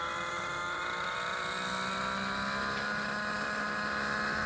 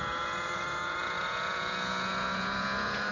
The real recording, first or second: first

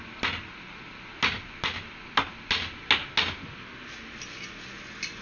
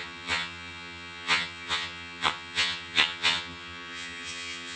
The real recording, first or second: first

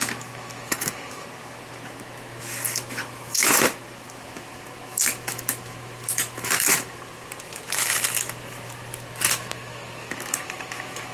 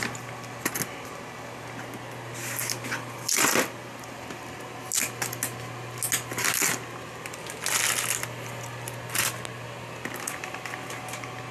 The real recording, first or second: second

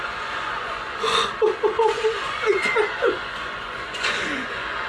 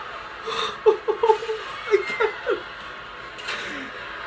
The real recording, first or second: second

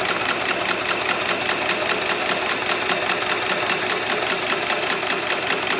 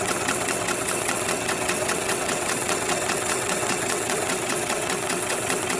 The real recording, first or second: first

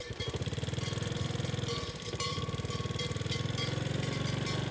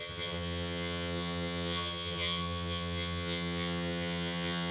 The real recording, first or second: first